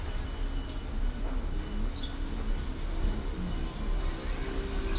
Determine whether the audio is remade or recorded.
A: recorded